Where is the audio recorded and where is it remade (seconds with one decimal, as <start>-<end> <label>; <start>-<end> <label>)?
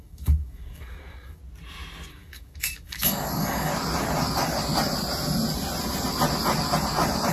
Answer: 0.0-1.4 remade; 1.4-2.1 recorded; 2.1-3.7 remade; 3.7-7.3 recorded